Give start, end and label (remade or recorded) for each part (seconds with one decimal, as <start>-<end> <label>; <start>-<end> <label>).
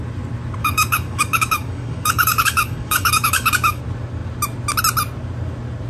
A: 0.0-0.6 recorded; 0.6-3.8 remade; 3.8-5.9 recorded